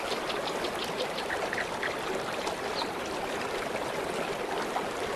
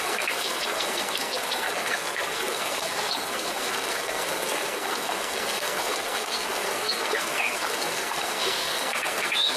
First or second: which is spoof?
second